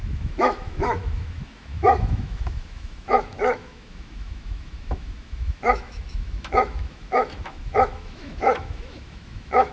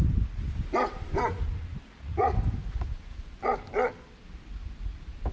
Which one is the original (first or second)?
second